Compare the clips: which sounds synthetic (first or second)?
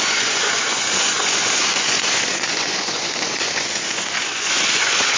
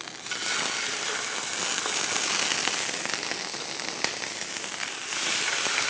first